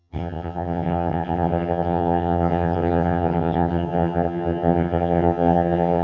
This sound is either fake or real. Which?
fake